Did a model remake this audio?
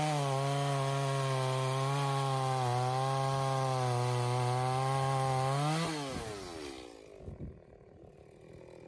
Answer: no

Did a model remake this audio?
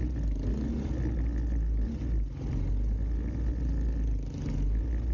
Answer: no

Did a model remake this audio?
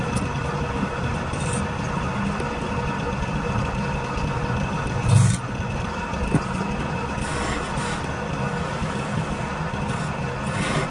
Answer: no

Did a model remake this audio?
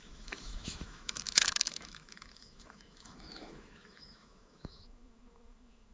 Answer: yes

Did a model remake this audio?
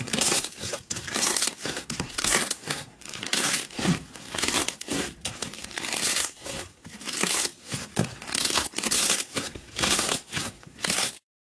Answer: yes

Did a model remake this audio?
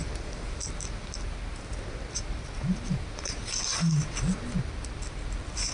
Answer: no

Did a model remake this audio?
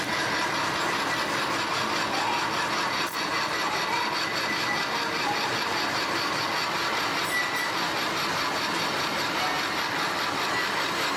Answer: no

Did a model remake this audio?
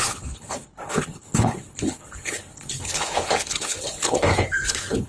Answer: yes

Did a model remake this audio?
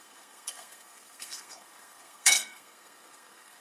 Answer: yes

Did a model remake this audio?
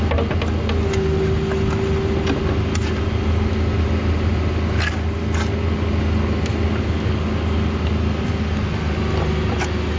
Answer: no